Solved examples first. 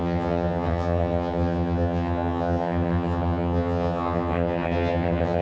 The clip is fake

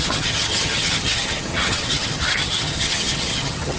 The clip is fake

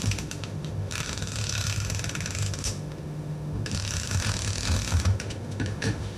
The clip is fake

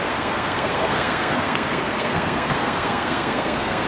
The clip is fake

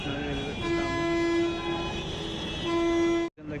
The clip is real